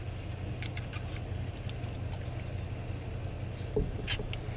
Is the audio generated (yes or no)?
no